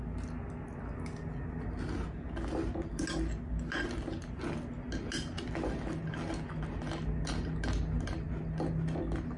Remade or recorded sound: recorded